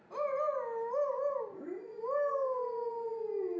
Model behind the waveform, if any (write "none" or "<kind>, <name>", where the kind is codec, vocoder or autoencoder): none